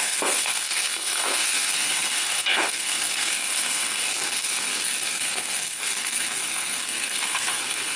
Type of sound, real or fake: fake